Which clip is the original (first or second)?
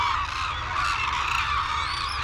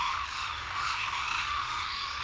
first